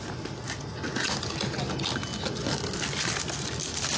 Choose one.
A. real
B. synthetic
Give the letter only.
A